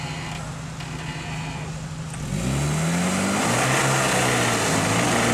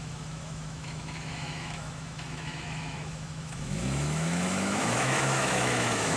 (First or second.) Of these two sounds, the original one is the first